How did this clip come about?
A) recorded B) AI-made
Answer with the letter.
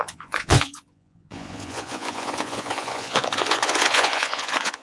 B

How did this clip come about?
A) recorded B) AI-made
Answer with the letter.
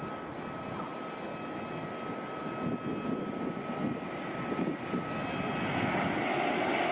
A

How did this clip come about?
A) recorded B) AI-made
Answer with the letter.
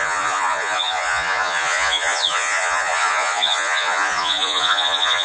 B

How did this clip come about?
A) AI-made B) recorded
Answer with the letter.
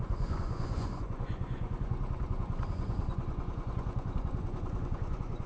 A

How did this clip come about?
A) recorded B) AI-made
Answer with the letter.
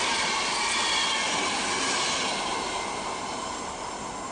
A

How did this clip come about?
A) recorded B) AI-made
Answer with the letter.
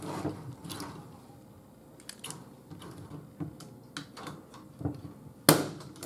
A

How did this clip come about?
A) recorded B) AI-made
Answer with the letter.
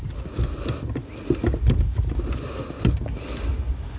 A